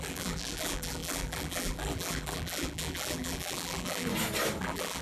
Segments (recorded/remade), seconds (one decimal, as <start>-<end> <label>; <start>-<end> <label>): 0.0-4.1 remade; 4.1-4.6 recorded; 4.6-5.0 remade